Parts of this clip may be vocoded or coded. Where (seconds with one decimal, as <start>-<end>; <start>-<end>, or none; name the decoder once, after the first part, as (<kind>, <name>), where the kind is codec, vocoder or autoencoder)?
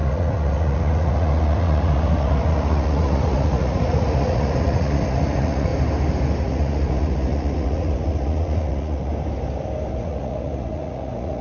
0.0-5.7 (vocoder, Vocos); 6.4-9.1; 9.9-11.4